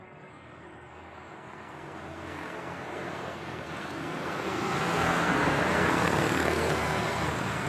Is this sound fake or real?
fake